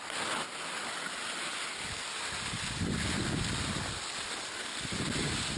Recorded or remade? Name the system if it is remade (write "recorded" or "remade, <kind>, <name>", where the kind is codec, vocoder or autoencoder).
recorded